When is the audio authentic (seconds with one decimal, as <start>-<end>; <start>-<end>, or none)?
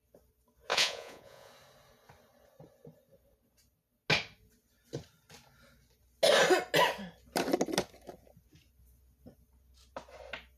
0.0-0.7; 1.5-10.6